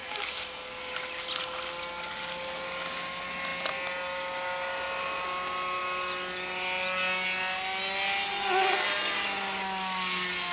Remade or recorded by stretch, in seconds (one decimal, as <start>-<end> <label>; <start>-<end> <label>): 0.0-10.5 recorded